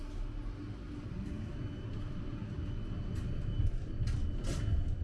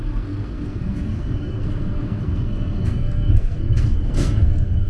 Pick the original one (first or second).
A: first